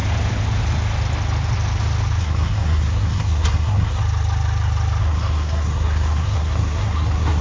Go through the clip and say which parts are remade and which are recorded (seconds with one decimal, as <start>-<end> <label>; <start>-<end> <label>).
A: 0.0-2.2 recorded; 2.2-4.0 remade; 4.0-5.0 recorded; 5.0-7.4 remade